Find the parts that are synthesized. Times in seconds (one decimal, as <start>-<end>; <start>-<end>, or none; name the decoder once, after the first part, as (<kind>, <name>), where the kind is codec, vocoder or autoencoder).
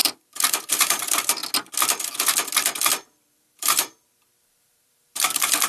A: 0.0-1.4 (vocoder, BigVGAN v2); 2.9-5.7